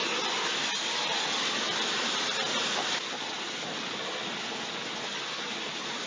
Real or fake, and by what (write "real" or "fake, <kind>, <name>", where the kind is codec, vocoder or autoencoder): real